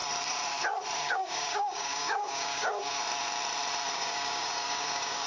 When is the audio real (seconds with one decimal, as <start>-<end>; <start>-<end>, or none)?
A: 0.0-1.0; 3.0-3.9